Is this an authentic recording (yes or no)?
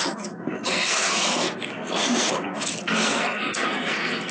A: no